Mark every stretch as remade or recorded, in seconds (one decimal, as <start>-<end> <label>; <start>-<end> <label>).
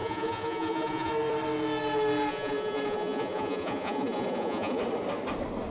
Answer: 0.0-1.1 remade; 1.1-2.3 recorded; 2.3-4.8 remade; 4.8-5.7 recorded